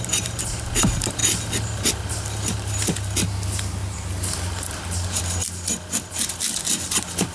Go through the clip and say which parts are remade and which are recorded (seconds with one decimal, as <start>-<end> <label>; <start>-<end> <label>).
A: 0.0-7.3 recorded